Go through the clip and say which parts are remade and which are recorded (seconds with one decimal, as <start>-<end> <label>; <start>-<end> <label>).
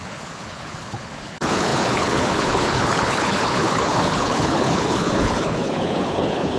0.0-6.6 remade